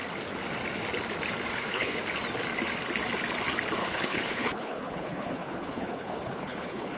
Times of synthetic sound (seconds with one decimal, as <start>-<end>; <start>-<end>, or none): 1.5-2.0; 3.8-7.0